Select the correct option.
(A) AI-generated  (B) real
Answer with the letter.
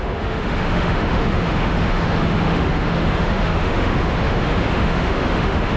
A